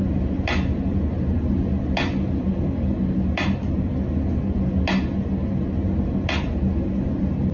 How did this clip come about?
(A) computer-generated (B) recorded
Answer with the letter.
B